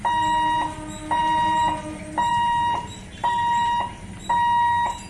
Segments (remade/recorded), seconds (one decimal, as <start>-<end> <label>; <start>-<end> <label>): 0.0-1.2 recorded; 1.2-4.3 remade; 4.3-5.1 recorded